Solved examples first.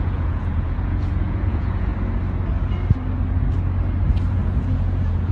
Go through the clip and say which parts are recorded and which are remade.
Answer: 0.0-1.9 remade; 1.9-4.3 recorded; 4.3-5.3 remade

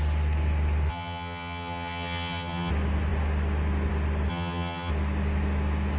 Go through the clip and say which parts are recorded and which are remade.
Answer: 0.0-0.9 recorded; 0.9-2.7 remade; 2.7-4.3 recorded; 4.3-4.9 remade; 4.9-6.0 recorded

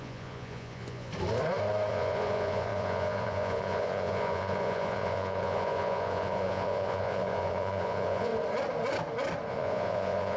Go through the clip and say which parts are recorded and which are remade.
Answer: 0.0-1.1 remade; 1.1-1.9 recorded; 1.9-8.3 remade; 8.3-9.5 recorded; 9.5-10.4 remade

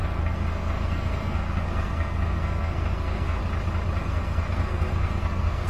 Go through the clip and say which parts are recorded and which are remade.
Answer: 0.0-3.4 remade; 3.4-4.0 recorded; 4.0-5.7 remade

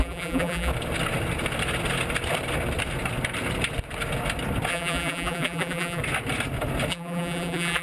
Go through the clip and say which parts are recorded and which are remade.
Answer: 0.0-0.7 remade; 0.7-4.7 recorded; 4.7-6.0 remade; 6.0-6.9 recorded; 6.9-7.8 remade